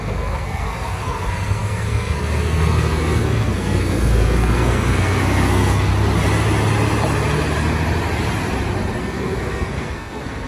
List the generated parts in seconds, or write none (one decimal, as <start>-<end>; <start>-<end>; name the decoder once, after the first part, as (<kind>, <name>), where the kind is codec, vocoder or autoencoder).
0.0-5.9 (codec, SNAC); 9.0-10.5